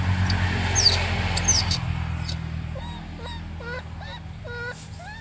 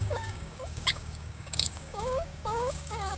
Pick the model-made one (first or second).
second